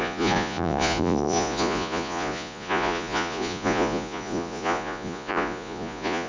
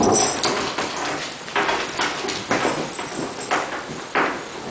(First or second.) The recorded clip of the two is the second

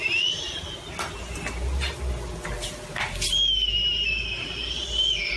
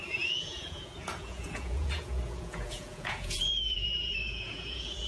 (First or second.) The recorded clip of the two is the first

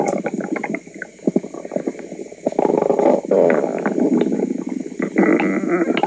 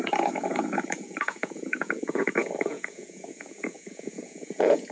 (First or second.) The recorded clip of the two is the first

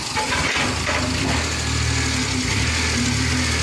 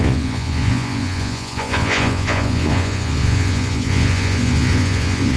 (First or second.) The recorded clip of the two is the first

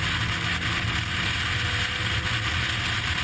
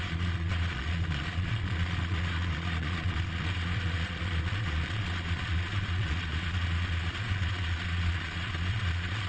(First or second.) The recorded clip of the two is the first